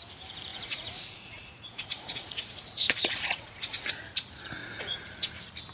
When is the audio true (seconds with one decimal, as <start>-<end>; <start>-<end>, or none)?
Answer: 0.0-0.5; 3.9-4.6; 5.3-5.7

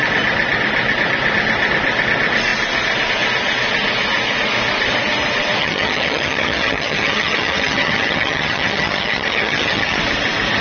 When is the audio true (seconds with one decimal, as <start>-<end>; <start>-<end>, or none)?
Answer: 0.0-5.6; 10.0-10.6

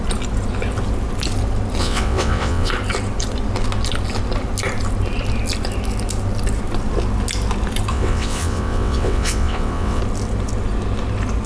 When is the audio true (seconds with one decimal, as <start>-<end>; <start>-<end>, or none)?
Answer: 0.0-1.8; 2.7-7.9; 10.0-11.5

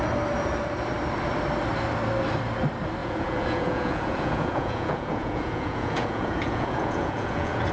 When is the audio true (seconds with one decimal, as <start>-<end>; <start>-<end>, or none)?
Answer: 0.0-3.0

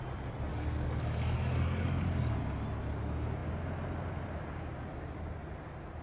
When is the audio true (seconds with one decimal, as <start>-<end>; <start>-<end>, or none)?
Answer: 0.0-0.5; 2.4-6.0

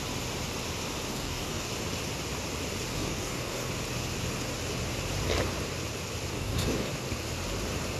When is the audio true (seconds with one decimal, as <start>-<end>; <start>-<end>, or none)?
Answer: 0.0-1.1; 1.7-2.9; 3.7-6.3; 6.9-8.0

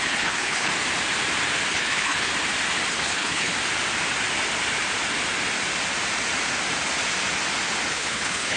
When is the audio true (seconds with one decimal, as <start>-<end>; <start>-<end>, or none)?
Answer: 0.7-1.7; 2.3-2.9; 3.5-7.9

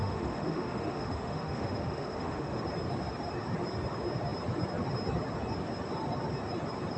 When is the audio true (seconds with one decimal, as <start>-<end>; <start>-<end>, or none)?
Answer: 2.6-7.0